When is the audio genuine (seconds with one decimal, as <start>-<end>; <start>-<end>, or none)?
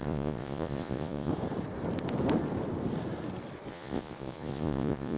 1.3-3.7